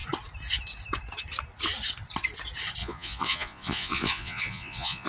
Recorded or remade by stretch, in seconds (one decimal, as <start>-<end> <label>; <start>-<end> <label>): 0.0-2.8 recorded; 2.8-5.1 remade